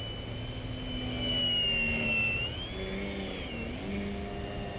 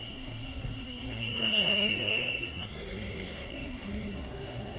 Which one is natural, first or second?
first